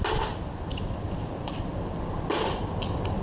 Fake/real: real